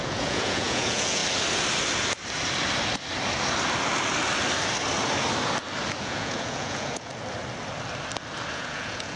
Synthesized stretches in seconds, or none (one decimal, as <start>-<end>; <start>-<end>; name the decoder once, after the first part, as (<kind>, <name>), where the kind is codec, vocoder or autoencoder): 0.0-1.2 (vocoder, Vocos); 6.0-7.1; 8.5-9.2